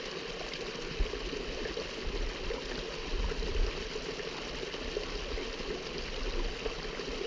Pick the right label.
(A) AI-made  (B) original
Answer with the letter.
B